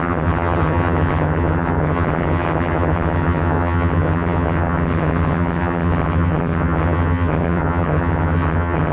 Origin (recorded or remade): remade